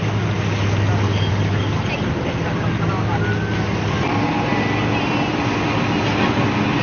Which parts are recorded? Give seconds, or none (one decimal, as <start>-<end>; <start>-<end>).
0.0-6.8